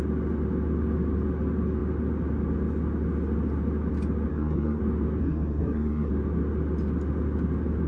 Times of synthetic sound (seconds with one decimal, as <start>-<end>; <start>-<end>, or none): 4.3-4.8; 5.2-6.1